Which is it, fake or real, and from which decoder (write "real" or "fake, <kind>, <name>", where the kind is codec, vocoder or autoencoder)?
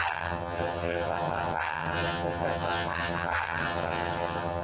fake, vocoder, HiFi-GAN